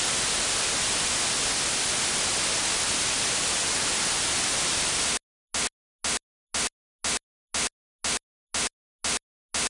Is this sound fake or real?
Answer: real